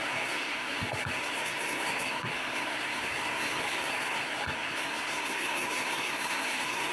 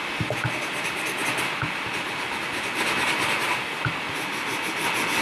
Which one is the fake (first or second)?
first